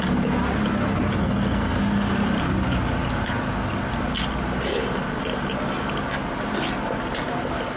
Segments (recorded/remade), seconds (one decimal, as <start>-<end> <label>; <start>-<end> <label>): 0.0-1.2 recorded; 1.2-1.8 remade; 1.8-7.8 recorded